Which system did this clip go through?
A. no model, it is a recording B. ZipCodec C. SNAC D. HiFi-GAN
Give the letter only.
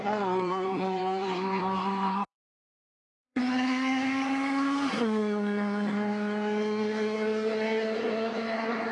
C